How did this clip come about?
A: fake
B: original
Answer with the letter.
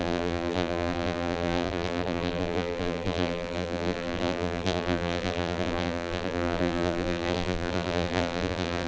A